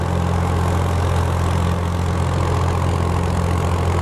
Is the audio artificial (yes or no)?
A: no